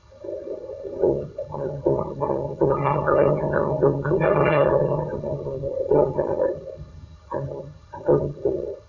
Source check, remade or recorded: remade